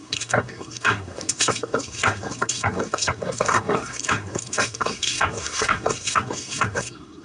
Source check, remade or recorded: remade